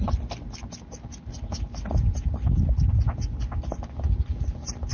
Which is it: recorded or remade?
recorded